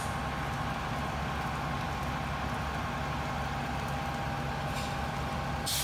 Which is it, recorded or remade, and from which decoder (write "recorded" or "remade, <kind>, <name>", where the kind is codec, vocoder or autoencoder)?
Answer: recorded